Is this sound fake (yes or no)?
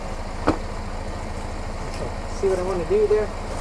no